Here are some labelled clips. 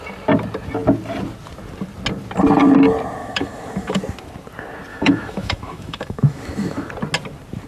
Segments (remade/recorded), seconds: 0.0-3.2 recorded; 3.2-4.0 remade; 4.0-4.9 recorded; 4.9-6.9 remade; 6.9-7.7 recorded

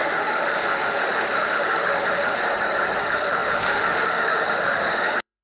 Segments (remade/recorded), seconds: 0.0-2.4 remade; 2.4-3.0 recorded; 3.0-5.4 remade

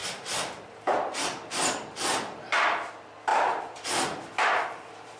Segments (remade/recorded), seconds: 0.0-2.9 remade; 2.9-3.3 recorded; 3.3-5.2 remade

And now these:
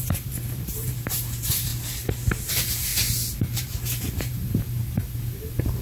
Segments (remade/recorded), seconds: 0.0-1.7 remade; 1.7-2.5 recorded; 2.5-2.9 remade; 2.9-3.6 recorded; 3.6-5.8 remade

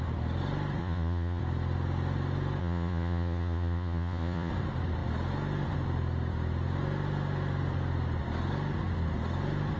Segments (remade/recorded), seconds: 0.0-0.8 recorded; 0.8-1.4 remade; 1.4-2.6 recorded; 2.6-4.5 remade; 4.5-9.8 recorded

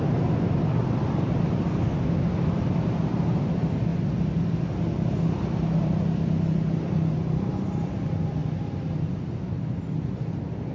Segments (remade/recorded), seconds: 0.0-10.7 recorded

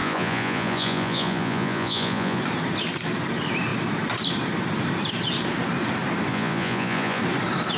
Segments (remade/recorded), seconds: 0.0-2.4 remade; 2.4-6.3 recorded; 6.3-7.2 remade; 7.2-7.8 recorded

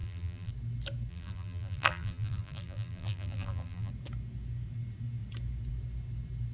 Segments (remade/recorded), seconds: 0.0-0.5 remade; 0.5-1.1 recorded; 1.1-3.9 remade; 3.9-6.5 recorded